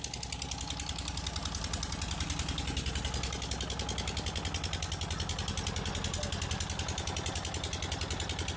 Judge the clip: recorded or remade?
recorded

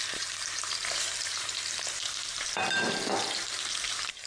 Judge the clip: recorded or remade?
remade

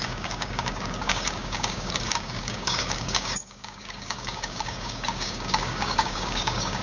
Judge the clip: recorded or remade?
remade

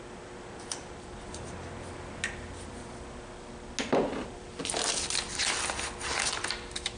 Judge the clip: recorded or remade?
recorded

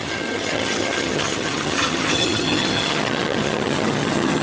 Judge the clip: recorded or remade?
remade